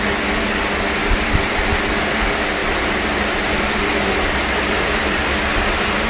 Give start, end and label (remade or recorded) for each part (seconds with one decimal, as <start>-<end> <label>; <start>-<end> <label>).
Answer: 0.0-1.0 recorded; 1.0-1.7 remade; 1.7-2.6 recorded; 2.6-5.2 remade; 5.2-6.1 recorded